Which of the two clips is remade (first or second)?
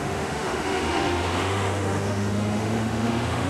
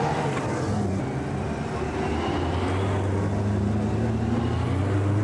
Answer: first